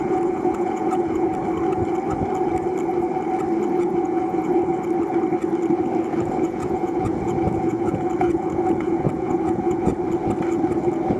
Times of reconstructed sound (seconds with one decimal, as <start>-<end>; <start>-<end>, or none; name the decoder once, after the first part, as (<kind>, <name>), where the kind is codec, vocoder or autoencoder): 0.0-1.3 (vocoder, Vocos); 3.7-4.7; 6.2-9.9